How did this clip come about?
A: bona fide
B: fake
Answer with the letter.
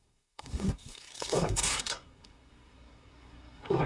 B